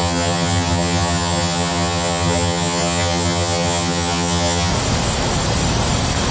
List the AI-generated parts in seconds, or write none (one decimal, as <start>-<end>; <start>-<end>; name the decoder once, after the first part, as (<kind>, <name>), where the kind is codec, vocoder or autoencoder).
0.0-4.7 (vocoder, HiFi-GAN)